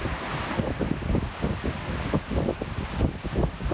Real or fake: real